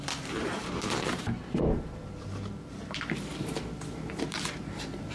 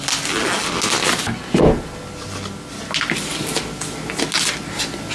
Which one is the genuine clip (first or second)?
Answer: second